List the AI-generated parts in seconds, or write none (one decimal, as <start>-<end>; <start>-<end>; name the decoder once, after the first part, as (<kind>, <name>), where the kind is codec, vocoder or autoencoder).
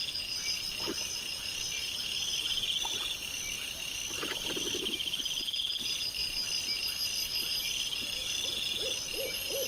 none